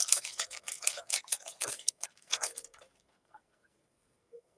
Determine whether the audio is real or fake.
fake